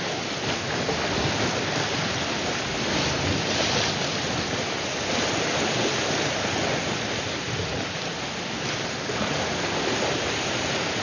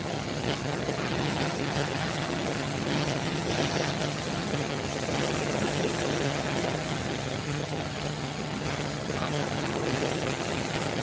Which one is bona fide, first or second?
first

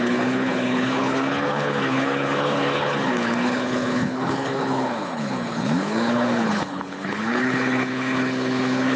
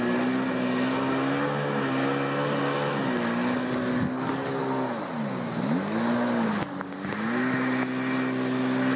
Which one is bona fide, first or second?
second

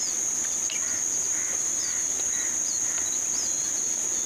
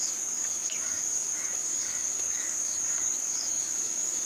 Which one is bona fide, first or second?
first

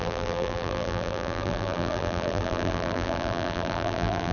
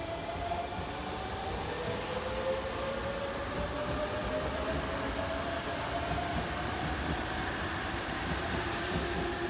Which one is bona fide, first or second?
second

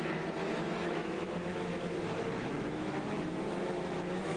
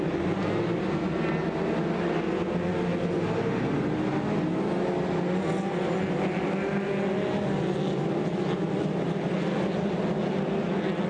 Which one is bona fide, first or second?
second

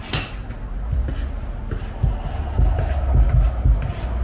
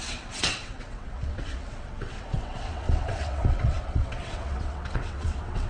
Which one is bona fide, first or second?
first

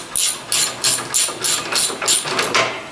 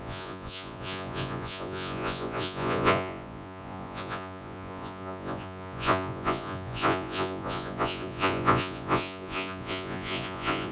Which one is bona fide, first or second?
first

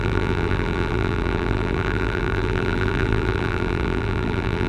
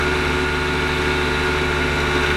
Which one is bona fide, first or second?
second